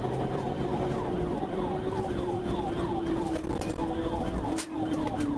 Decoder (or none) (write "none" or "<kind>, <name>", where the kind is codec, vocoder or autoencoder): vocoder, BigVGAN v2